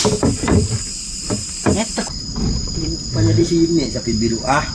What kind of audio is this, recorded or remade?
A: remade